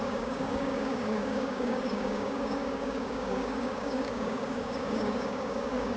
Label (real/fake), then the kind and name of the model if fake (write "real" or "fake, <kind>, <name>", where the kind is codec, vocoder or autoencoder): fake, codec, DAC